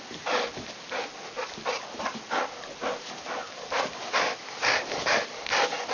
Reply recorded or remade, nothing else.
recorded